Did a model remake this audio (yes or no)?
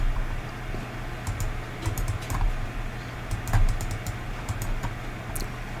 no